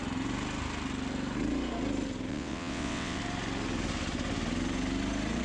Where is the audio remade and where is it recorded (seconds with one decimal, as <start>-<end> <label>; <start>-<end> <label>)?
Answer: 0.0-2.3 recorded; 2.3-3.2 remade; 3.2-5.4 recorded